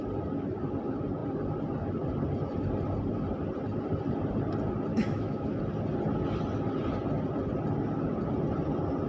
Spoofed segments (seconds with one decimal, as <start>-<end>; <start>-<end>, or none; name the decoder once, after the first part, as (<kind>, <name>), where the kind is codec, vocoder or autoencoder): 4.9-5.6 (autoencoder, DAC-VAE)